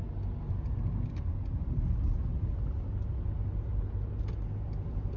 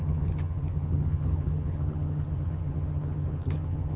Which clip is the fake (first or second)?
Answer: second